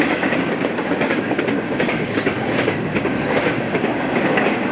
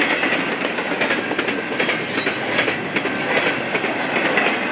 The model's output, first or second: first